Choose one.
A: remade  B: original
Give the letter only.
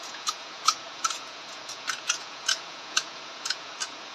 A